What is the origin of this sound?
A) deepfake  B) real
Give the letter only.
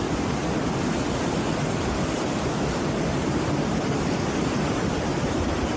B